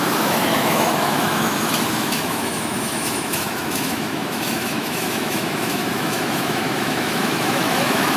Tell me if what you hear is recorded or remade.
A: remade